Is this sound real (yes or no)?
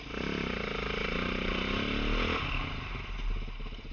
yes